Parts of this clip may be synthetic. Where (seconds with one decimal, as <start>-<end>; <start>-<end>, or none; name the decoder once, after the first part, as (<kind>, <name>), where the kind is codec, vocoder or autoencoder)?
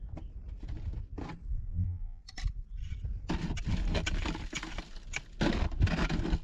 1.7-2.2 (vocoder, BigVGAN v2)